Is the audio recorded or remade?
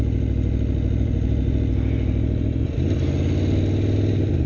recorded